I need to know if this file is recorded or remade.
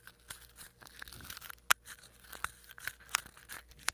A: recorded